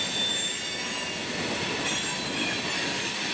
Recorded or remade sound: recorded